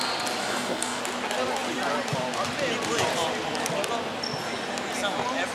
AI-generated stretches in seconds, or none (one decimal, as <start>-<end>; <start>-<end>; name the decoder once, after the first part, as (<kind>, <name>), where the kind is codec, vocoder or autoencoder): 0.4-1.0 (codec, DAC)